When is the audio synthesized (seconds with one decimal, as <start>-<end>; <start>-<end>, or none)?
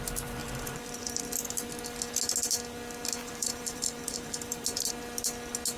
0.4-1.2; 3.2-4.9